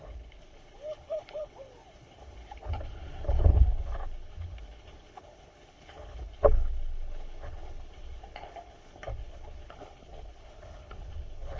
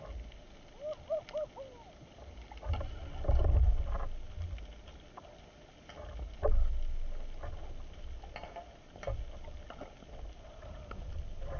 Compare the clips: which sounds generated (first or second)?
first